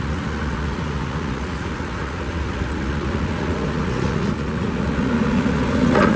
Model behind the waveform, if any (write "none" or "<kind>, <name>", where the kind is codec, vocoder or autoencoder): vocoder, Vocos